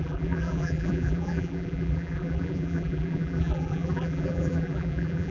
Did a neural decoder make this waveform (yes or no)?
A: yes